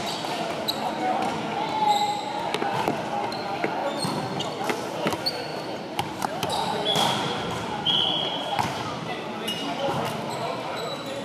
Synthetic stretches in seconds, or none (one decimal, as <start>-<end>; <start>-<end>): 5.5-10.0